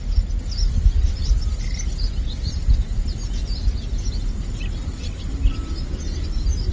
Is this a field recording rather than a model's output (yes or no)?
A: yes